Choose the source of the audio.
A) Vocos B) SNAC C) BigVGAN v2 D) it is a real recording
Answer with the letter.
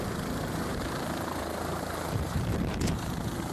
C